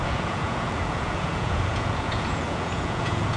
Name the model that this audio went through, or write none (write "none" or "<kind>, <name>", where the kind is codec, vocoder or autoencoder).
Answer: vocoder, Vocos